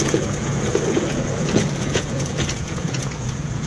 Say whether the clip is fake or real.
fake